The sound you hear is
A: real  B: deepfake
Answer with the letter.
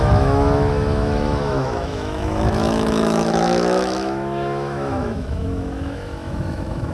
B